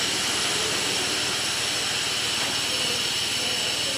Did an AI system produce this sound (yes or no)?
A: no